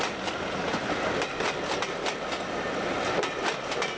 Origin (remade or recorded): recorded